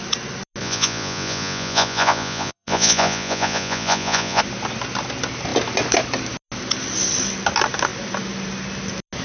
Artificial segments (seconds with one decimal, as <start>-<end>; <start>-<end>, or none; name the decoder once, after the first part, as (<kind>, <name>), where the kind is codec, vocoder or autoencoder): 0.6-4.4 (vocoder, Vocos)